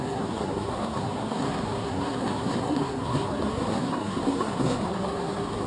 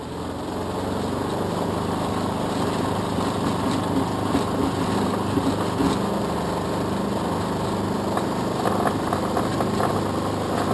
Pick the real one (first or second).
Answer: second